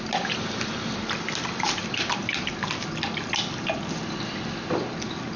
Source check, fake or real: real